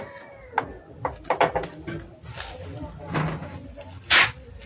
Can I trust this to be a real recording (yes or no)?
yes